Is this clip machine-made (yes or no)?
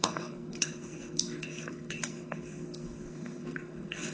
yes